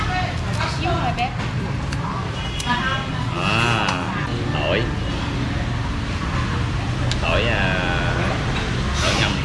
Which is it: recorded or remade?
recorded